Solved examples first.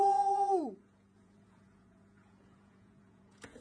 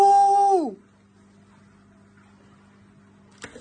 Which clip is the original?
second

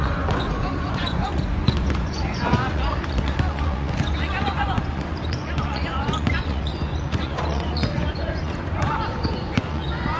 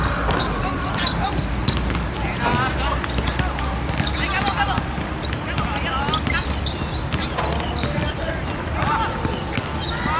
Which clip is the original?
second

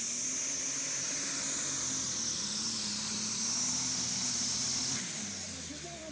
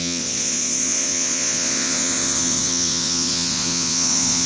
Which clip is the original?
first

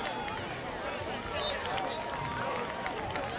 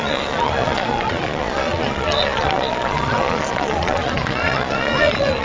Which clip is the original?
first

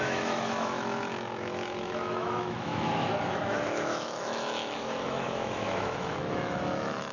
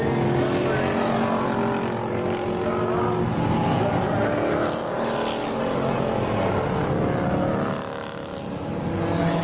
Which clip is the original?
second